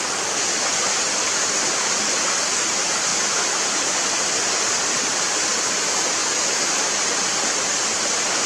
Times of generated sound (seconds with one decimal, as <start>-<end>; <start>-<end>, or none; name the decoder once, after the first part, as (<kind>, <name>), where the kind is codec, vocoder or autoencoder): none